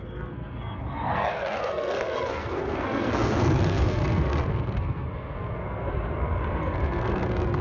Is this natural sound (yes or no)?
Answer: no